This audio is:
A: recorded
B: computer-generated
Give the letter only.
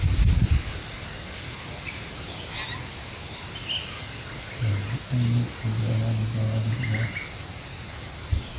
A